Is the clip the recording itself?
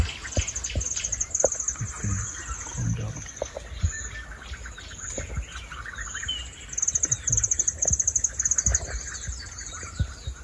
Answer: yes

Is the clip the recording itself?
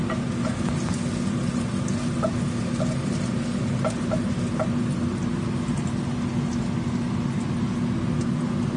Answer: yes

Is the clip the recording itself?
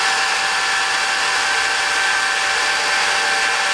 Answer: yes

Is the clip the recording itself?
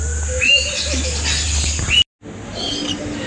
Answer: yes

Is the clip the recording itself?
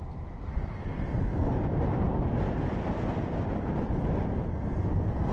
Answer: yes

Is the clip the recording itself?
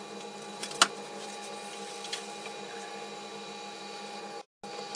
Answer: yes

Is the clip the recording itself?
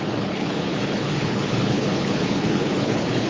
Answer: no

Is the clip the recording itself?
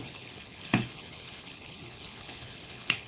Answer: no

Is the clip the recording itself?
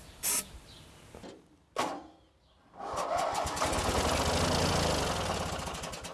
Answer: yes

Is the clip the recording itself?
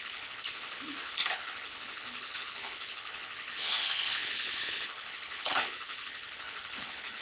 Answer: no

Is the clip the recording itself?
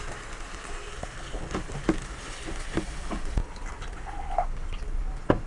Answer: yes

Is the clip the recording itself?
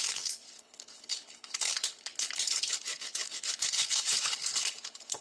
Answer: no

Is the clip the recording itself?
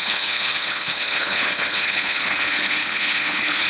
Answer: no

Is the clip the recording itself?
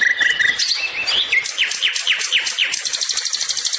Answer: yes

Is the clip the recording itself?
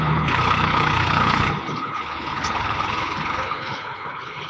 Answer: no